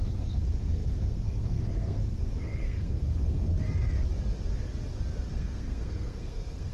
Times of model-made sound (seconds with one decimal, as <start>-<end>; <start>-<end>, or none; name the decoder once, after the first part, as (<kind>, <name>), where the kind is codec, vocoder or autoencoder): 0.0-3.5 (codec, SNAC); 5.3-6.7